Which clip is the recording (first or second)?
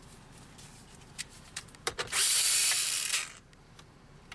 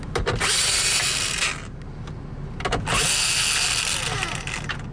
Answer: second